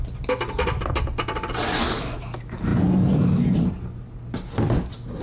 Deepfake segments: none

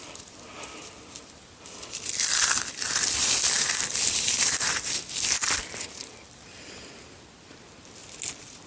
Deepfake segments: 0.8-5.0 (vocoder, BigVGAN v2); 5.4-6.7

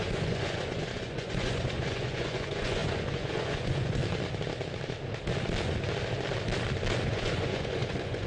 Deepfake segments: 0.0-4.0 (vocoder, Vocos); 7.0-8.3

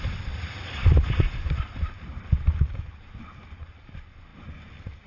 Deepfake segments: 0.8-3.9 (vocoder, BigVGAN v2)

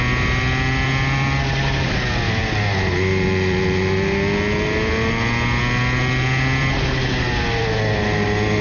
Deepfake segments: none

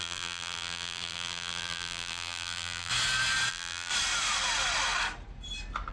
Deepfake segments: 0.0-2.9 (vocoder, BigVGAN v2); 3.5-3.9

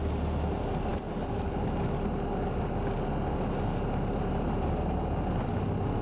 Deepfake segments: none

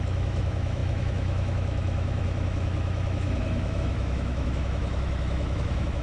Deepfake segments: 0.0-6.0 (autoencoder, DAC-VAE)